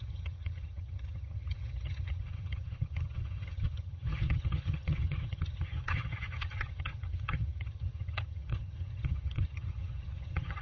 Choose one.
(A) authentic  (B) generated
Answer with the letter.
B